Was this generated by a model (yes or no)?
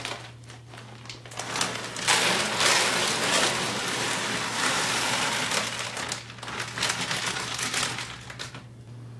no